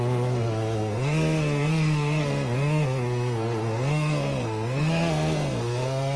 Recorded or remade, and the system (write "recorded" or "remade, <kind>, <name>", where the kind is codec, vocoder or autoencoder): remade, codec, SNAC